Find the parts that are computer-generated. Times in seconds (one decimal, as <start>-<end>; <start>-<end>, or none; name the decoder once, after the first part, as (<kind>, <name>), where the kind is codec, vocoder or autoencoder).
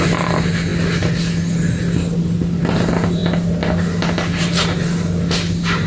none